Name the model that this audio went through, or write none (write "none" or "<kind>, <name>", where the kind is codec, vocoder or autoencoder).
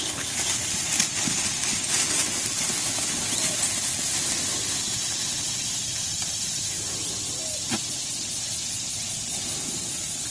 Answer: none